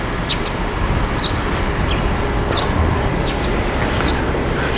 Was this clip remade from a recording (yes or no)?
no